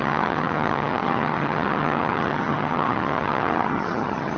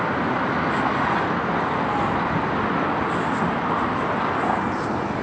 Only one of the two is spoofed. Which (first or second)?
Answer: first